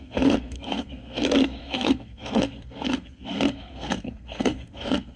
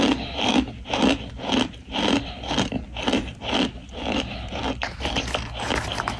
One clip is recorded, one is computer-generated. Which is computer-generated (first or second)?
first